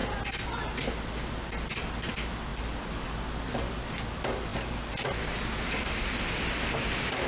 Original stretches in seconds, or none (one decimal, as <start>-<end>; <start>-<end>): 0.0-7.3